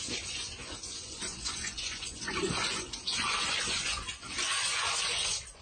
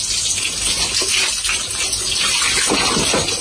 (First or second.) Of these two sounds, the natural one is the second